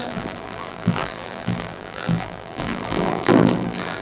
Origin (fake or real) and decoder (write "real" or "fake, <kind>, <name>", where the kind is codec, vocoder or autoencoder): fake, vocoder, BigVGAN v2